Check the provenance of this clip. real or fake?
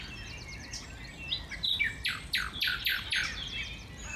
real